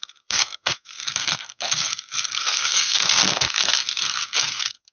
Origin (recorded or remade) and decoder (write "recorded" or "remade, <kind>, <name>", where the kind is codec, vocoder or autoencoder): remade, codec, SNAC